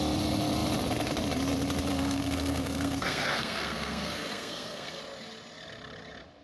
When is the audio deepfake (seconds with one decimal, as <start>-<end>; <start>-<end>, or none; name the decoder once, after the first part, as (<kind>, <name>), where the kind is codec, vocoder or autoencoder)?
1.9-5.0 (codec, SNAC)